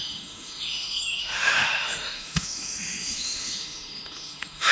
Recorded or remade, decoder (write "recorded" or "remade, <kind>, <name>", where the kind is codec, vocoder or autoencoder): remade, autoencoder, DAC-VAE